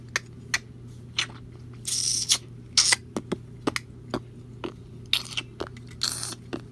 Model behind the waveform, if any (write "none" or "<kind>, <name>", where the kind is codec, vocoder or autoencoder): none